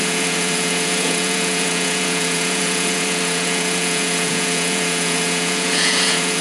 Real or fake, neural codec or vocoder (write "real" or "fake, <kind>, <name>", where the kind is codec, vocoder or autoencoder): fake, vocoder, Vocos